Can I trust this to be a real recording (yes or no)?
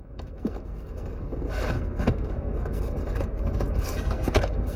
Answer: no